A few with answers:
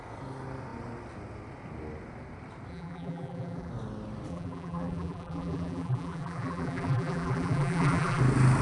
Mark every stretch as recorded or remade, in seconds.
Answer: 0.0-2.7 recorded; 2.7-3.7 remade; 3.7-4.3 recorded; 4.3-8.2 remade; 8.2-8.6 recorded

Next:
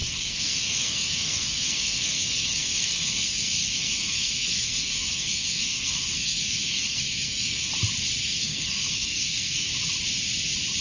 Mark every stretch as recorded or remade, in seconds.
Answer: 0.0-7.7 remade; 7.7-8.2 recorded; 8.2-9.7 remade; 9.7-10.8 recorded

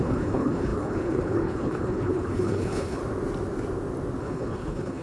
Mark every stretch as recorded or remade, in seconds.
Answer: 0.0-3.0 remade; 3.0-4.2 recorded; 4.2-5.0 remade

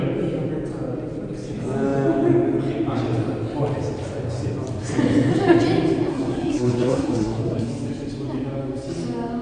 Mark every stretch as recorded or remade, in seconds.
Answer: 0.0-6.1 recorded; 6.1-7.7 remade; 7.7-9.4 recorded

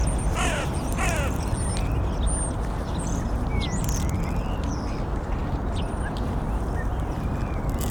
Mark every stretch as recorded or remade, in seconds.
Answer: 0.0-7.9 recorded

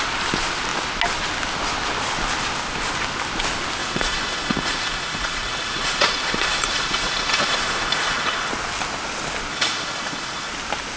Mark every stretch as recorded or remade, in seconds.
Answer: 0.0-3.8 recorded; 3.8-8.5 remade; 8.5-9.5 recorded; 9.5-10.5 remade; 10.5-11.0 recorded